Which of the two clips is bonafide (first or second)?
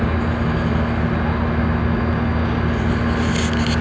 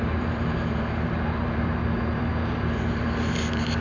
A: first